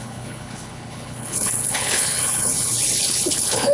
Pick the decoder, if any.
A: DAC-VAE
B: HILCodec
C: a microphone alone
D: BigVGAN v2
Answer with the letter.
B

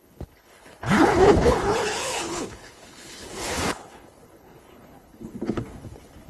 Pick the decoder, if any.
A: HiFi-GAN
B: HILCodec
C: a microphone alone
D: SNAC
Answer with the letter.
B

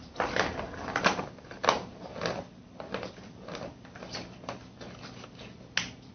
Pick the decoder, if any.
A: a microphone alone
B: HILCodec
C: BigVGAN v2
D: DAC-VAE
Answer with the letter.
A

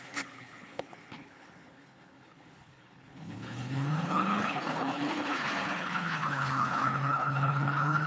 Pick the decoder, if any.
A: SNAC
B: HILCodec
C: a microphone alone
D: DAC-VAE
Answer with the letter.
B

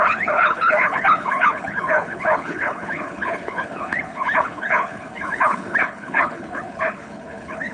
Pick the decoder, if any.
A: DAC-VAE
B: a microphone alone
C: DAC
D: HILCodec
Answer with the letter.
D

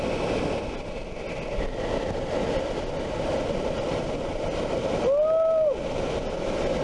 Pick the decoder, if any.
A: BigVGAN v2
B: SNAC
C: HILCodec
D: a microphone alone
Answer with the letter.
D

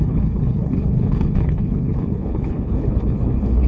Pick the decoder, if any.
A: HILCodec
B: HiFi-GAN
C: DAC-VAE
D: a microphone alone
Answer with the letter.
A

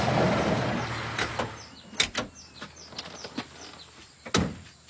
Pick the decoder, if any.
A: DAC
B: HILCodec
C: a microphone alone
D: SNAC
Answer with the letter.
C